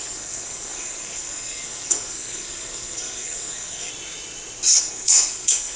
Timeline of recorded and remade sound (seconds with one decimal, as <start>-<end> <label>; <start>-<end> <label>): 0.0-3.9 remade; 3.9-4.8 recorded; 4.8-5.8 remade